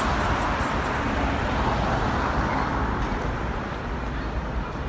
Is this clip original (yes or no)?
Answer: yes